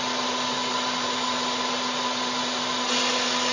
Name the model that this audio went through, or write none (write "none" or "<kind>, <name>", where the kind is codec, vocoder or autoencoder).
none